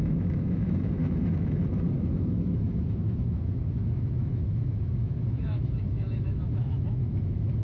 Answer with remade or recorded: remade